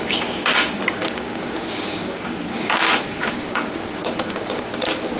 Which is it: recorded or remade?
remade